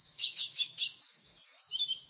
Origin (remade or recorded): remade